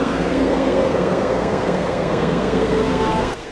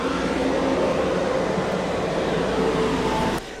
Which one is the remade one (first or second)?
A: first